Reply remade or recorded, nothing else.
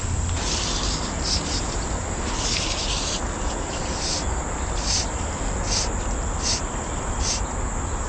recorded